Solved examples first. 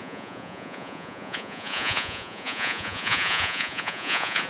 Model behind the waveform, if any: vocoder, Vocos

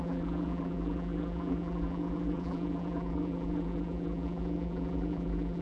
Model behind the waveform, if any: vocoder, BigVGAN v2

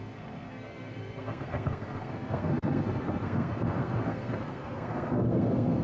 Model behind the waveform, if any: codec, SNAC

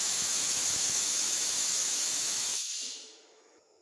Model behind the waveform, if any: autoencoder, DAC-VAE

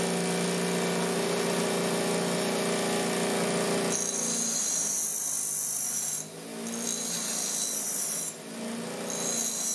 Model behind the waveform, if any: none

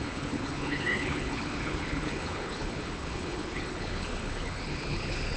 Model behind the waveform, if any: codec, HILCodec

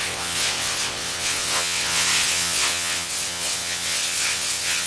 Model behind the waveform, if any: vocoder, WaveNeXt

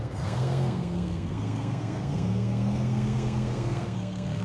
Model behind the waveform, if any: codec, SNAC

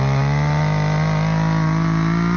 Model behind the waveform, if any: none